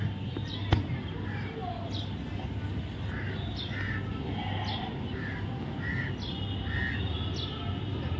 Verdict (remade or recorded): recorded